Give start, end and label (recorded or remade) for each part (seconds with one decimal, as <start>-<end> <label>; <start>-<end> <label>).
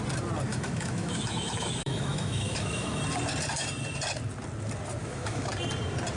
0.0-0.5 recorded; 0.5-3.0 remade; 3.0-5.0 recorded; 5.0-5.5 remade; 5.5-6.2 recorded